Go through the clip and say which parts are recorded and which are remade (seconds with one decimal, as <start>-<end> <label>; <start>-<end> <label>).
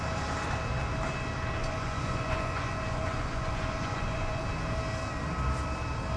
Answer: 0.0-1.6 recorded; 1.6-4.4 remade; 4.4-6.2 recorded